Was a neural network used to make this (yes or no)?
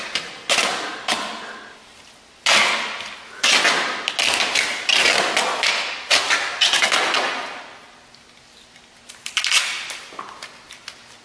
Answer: no